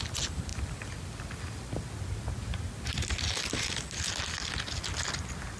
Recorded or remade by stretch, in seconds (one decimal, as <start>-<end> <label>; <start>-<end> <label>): 0.0-5.6 recorded

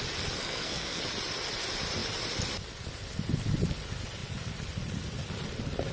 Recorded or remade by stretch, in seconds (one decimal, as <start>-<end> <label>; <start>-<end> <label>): 0.0-0.4 recorded; 0.4-1.0 remade; 1.0-5.9 recorded

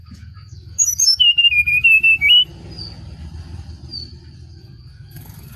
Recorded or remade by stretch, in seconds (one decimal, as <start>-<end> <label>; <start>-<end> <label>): 0.0-2.5 remade; 2.5-4.6 recorded; 4.6-5.6 remade

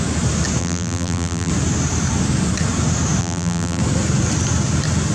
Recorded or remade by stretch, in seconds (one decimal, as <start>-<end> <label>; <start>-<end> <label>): 0.0-0.6 recorded; 0.6-1.5 remade; 1.5-3.2 recorded; 3.2-3.8 remade; 3.8-5.1 recorded

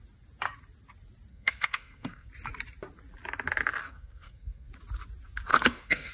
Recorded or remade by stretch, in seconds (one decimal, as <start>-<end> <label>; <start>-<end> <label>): 0.0-1.3 recorded; 1.3-2.3 remade; 2.3-3.8 recorded; 3.8-4.7 remade; 4.7-5.5 recorded; 5.5-6.1 remade

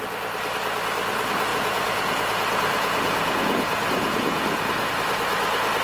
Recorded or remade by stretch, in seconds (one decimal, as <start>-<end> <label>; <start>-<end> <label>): 0.0-1.5 recorded; 1.5-4.9 remade; 4.9-5.8 recorded

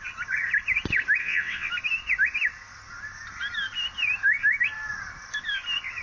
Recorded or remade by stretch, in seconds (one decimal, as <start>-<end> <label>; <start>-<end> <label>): 0.0-1.2 recorded; 1.2-1.7 remade; 1.7-6.0 recorded

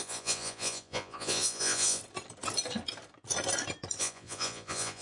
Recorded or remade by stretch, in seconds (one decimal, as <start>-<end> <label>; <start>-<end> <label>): 0.0-2.0 remade; 2.0-4.0 recorded; 4.0-5.0 remade